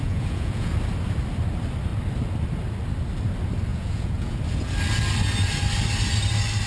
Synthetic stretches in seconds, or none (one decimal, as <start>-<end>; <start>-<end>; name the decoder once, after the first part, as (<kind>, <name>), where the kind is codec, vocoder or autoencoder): 0.0-0.7 (vocoder, Vocos); 3.7-4.4